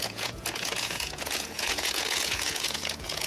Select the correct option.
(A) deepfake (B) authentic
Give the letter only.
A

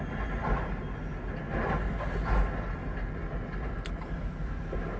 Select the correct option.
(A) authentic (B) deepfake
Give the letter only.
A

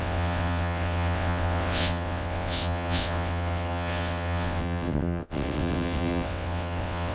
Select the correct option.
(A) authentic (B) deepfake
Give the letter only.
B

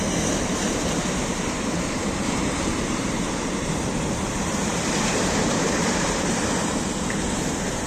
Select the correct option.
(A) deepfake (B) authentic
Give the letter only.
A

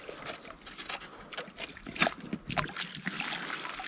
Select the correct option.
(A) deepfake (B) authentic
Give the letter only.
B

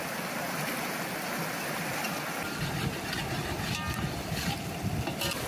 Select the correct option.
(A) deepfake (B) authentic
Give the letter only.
B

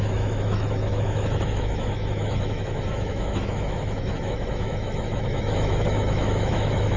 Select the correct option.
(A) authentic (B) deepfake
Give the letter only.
B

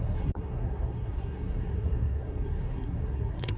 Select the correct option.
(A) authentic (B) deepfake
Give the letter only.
B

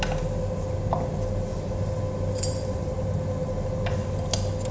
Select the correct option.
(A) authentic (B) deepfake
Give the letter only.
A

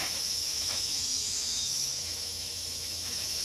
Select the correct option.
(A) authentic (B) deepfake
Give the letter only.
B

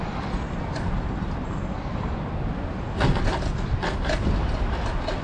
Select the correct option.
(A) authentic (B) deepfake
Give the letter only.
A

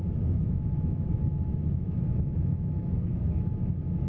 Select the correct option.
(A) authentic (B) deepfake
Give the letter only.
B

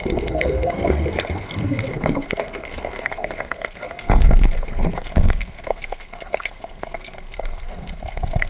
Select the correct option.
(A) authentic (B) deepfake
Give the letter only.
B